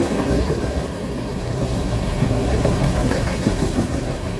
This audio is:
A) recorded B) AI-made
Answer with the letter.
B